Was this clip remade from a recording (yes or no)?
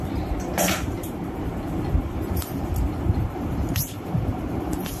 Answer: yes